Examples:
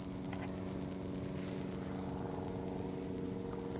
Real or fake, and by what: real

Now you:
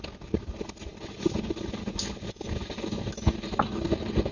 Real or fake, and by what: real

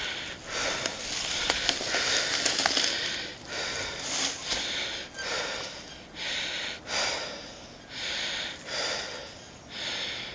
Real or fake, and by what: real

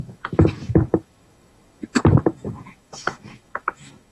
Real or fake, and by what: fake, autoencoder, DAC-VAE